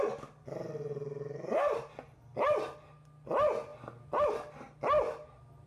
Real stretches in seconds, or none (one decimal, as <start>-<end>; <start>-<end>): 0.0-5.7

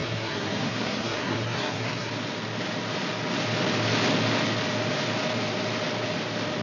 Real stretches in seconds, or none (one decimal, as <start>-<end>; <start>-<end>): 2.1-6.6

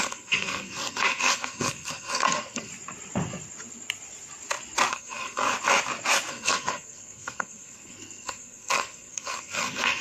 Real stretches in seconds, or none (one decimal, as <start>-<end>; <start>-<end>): 2.7-4.9; 5.4-6.3

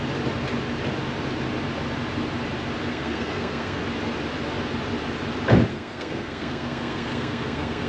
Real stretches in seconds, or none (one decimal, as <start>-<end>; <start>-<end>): 0.0-2.9; 3.8-5.7

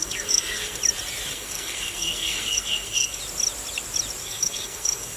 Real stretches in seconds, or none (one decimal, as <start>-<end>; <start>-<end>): 0.8-1.3; 3.2-4.2

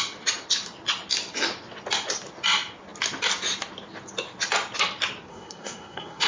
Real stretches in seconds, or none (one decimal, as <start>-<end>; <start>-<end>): 0.0-5.3

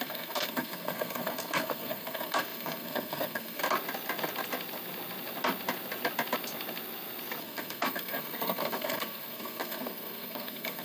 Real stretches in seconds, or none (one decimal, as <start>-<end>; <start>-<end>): 3.6-7.4